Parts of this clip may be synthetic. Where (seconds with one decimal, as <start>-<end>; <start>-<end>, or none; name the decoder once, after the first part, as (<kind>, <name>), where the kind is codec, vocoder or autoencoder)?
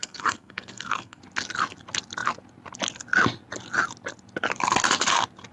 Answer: 0.0-1.2 (codec, SNAC)